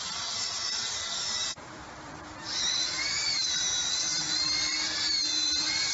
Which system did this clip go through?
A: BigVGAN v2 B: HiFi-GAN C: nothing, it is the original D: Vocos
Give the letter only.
A